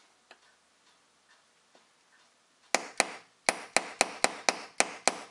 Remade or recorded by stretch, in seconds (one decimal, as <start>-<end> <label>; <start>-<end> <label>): 0.0-5.3 recorded